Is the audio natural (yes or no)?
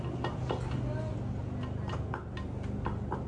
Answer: yes